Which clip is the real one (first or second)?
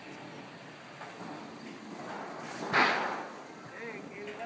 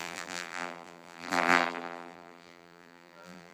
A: first